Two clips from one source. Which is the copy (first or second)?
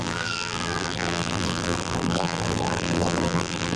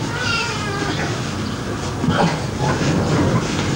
first